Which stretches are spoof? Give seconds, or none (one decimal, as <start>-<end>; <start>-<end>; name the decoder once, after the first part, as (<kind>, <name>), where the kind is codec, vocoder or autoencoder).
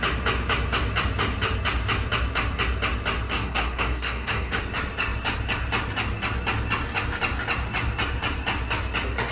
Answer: 3.3-4.6 (codec, SNAC)